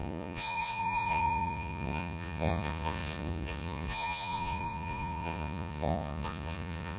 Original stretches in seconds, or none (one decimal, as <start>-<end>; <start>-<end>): none